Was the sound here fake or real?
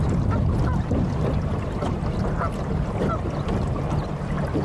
fake